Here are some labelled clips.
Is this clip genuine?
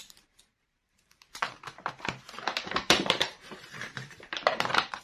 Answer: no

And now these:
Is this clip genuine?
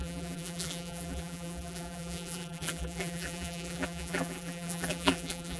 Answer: no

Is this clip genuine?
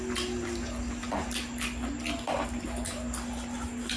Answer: yes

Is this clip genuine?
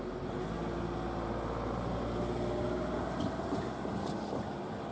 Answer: yes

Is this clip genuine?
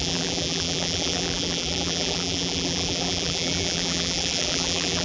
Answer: no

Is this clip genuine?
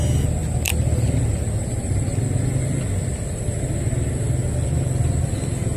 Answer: yes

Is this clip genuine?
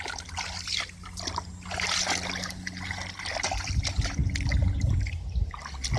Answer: yes